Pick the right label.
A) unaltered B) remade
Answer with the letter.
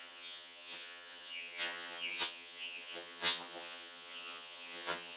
B